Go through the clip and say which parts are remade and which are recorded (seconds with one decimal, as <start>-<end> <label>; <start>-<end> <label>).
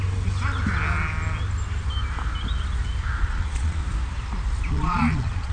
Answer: 0.0-3.2 recorded; 3.2-3.8 remade; 3.8-4.7 recorded; 4.7-5.5 remade